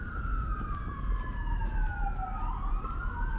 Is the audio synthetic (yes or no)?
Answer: no